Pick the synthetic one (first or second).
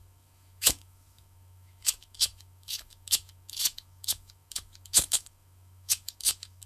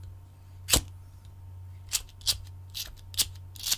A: first